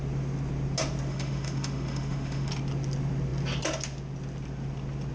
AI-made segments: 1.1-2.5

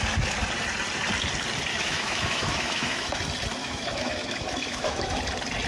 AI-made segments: 1.7-3.2; 3.6-5.2

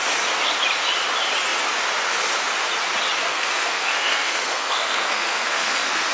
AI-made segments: 3.3-6.1

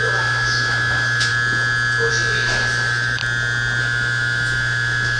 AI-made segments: 0.0-1.3; 2.1-3.2; 3.8-5.2

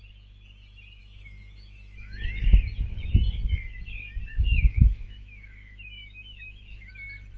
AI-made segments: 1.0-2.4; 4.3-6.9

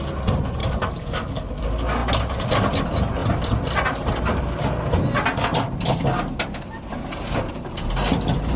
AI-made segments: 0.6-1.6

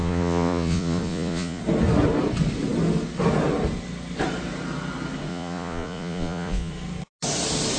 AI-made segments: 0.0-1.6; 5.3-6.7

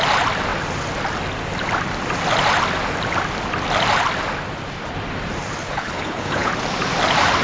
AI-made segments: 5.6-6.5